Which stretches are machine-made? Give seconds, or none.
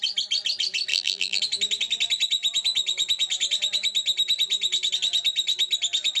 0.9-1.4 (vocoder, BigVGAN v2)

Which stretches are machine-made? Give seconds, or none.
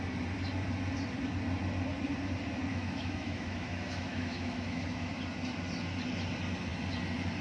2.7-5.2 (autoencoder, DAC-VAE)